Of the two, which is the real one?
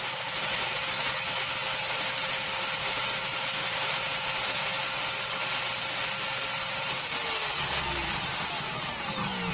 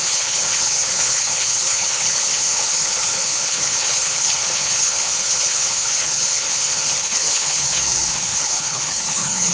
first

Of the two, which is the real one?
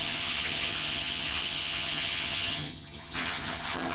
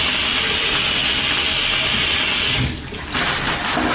second